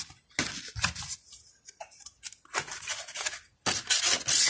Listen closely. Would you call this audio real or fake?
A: real